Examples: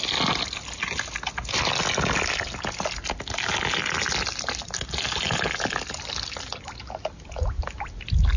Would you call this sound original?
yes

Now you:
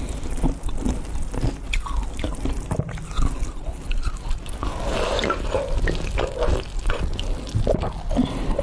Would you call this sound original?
yes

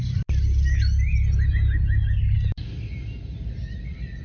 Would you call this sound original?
yes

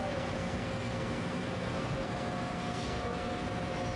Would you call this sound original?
no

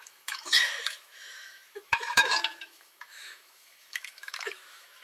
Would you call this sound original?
no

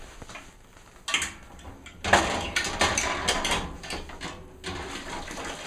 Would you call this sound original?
yes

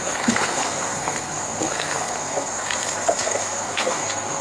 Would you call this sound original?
no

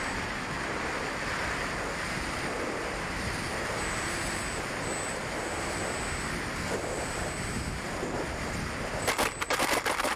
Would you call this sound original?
yes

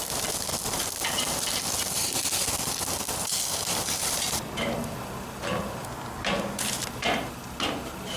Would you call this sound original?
yes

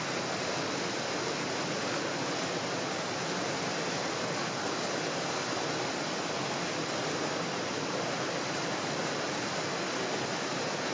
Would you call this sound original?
yes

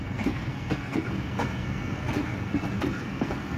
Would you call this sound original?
no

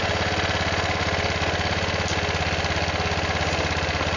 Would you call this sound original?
yes